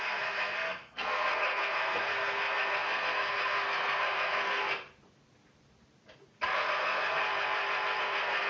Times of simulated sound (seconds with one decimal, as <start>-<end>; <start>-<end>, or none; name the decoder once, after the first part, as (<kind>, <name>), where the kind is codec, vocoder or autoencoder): 0.0-4.6 (codec, SNAC); 6.7-7.2; 8.0-8.5